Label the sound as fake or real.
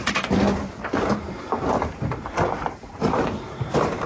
fake